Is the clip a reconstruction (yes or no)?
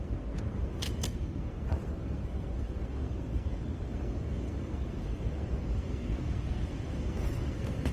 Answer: yes